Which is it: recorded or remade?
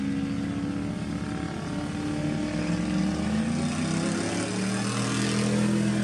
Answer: recorded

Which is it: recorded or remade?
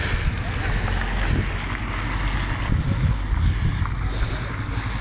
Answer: recorded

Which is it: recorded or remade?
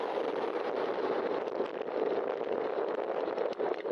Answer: recorded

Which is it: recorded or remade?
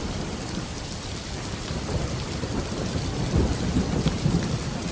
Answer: recorded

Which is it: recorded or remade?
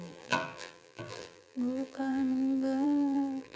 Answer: remade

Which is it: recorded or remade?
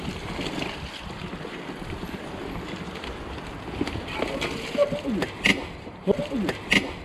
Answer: recorded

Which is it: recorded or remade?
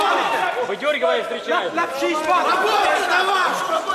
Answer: recorded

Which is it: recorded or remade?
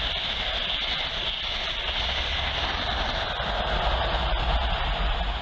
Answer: recorded